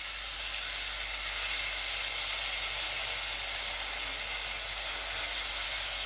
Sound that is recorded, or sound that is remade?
recorded